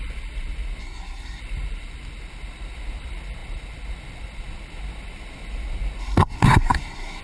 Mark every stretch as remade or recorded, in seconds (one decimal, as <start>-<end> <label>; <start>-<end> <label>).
0.0-0.8 recorded; 0.8-1.4 remade; 1.4-6.0 recorded; 6.0-7.2 remade